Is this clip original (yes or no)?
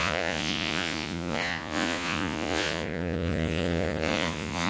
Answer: no